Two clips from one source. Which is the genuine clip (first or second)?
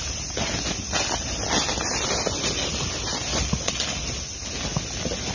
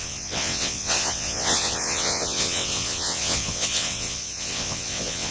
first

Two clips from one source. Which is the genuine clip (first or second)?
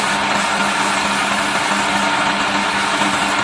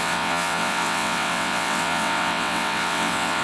first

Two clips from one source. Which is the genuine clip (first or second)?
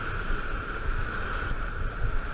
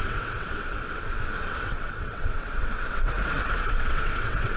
first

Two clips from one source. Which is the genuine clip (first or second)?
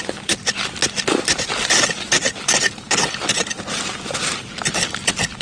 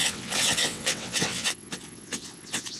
first